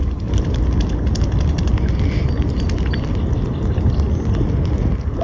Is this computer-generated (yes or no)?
no